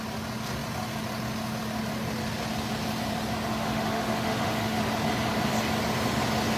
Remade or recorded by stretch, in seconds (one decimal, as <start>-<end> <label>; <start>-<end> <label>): 0.0-3.5 recorded; 3.5-4.8 remade; 4.8-6.6 recorded